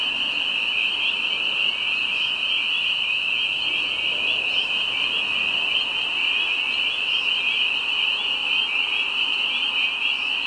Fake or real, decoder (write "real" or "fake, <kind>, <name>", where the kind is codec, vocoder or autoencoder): real